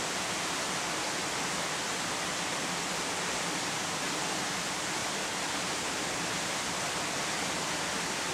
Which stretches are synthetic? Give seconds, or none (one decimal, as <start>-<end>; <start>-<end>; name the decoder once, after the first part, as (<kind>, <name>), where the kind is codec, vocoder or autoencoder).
none